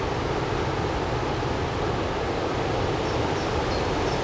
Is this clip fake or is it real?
real